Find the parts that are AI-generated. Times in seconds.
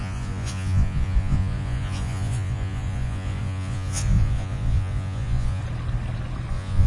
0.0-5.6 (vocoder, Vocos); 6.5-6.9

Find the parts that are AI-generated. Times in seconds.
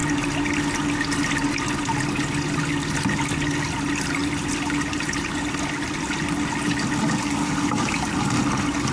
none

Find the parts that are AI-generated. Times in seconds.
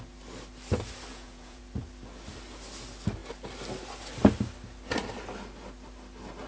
1.1-1.6 (vocoder, Vocos)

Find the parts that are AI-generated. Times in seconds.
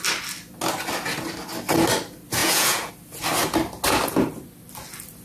2.4-2.9 (vocoder, Vocos)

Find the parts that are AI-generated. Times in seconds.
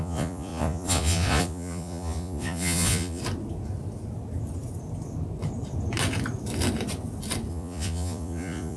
0.0-3.2 (vocoder, Vocos); 7.5-8.8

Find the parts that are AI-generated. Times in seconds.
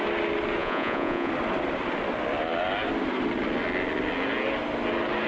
0.6-1.3 (vocoder, Vocos)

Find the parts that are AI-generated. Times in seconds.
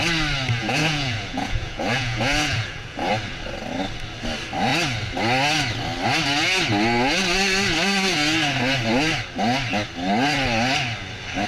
0.6-3.1 (vocoder, Vocos)